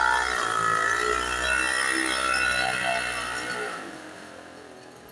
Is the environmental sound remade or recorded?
recorded